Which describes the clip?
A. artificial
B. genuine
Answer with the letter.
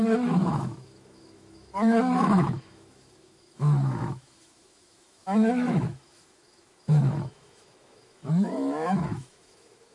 A